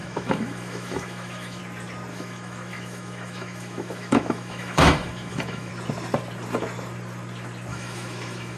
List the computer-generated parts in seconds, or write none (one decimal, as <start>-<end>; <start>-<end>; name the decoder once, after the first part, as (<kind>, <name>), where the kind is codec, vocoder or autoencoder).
0.0-1.6 (autoencoder, DAC-VAE); 2.1-5.7; 7.7-8.6